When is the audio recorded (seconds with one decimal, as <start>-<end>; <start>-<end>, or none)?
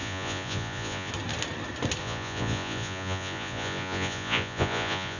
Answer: 1.1-2.0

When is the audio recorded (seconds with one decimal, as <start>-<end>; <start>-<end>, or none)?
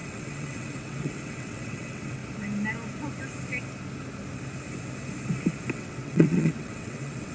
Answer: 2.2-5.7